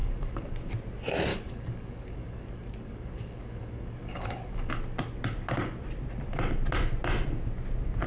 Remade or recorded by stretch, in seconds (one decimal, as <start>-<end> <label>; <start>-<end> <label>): 0.0-0.7 remade; 0.7-1.3 recorded; 1.3-4.7 remade; 4.7-8.1 recorded